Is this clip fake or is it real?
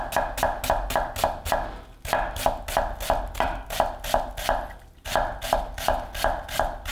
real